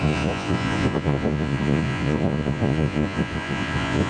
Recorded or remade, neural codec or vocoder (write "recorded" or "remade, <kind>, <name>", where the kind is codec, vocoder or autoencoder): remade, vocoder, Vocos